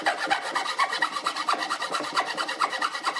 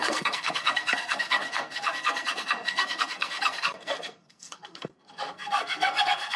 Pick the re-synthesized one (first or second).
second